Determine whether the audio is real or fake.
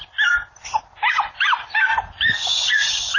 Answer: real